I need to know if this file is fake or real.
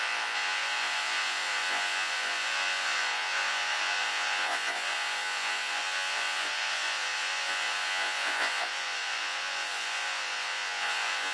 fake